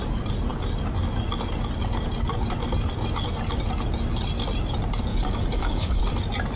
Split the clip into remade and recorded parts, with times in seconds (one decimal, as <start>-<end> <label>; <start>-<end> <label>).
0.0-5.1 recorded; 5.1-6.0 remade; 6.0-6.6 recorded